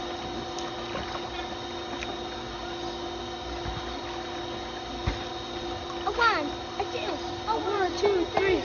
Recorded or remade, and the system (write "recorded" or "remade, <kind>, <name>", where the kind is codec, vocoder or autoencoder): recorded